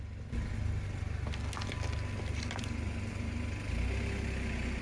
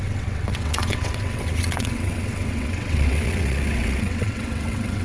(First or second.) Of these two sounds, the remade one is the second